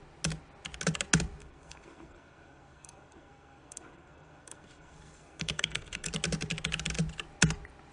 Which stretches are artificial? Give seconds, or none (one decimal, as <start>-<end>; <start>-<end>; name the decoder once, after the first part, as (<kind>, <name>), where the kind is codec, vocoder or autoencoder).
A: 1.4-6.1 (codec, SNAC)